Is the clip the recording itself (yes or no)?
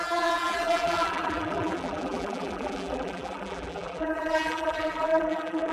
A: no